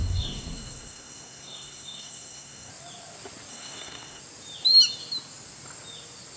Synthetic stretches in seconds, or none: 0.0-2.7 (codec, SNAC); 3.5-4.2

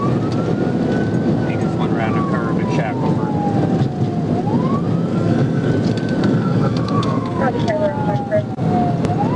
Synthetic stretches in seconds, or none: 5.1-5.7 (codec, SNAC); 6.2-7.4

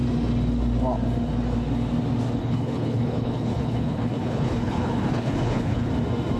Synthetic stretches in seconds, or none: 2.4-5.9 (codec, HILCodec)